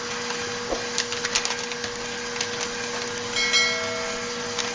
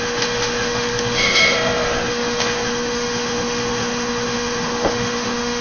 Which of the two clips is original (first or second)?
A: first